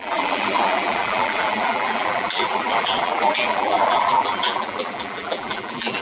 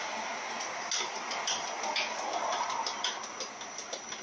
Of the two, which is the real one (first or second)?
second